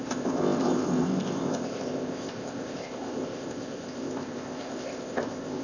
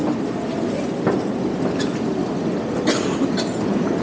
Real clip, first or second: second